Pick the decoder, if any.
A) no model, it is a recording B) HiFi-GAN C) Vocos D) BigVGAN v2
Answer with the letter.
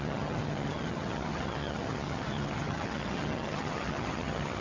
B